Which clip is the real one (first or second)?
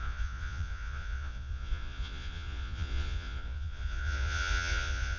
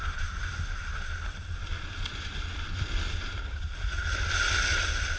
second